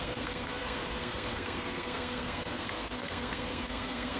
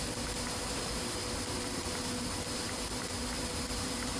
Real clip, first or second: second